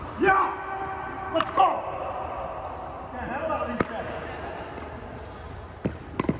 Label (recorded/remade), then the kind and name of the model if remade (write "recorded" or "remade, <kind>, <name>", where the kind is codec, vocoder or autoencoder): recorded